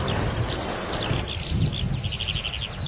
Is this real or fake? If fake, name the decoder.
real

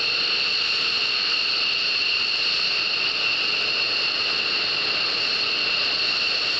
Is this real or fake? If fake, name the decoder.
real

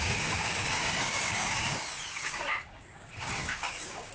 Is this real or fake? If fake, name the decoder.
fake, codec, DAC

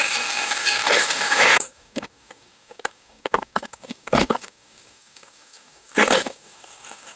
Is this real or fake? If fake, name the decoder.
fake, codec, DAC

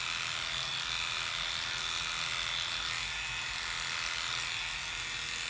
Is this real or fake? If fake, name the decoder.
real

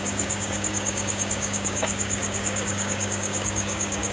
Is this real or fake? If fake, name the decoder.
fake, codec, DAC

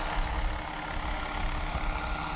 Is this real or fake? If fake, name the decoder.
real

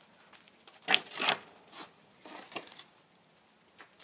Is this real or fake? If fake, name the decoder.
real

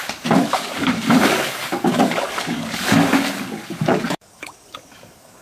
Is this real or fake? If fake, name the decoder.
fake, codec, DAC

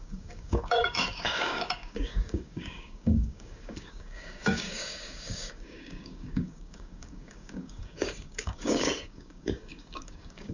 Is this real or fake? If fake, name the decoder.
fake, codec, DAC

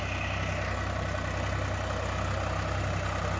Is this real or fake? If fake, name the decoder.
real